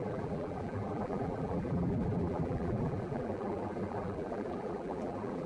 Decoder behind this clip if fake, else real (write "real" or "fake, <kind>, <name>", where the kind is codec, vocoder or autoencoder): fake, vocoder, BigVGAN v2